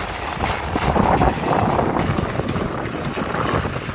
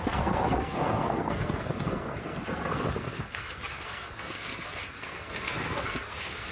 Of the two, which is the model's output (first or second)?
second